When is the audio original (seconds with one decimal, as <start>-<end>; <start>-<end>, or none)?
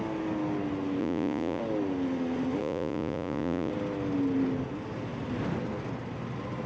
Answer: 0.0-1.0; 1.6-2.6; 3.7-6.7